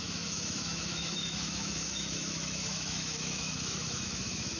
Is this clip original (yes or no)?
no